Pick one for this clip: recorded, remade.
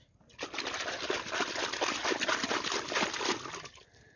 recorded